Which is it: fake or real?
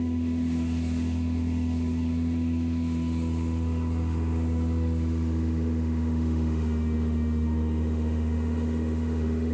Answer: fake